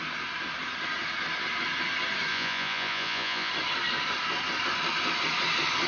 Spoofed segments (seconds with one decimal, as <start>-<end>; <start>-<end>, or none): 2.3-3.5